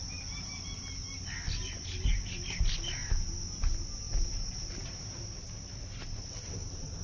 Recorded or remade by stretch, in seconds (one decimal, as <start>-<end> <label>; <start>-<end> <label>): 0.0-7.0 recorded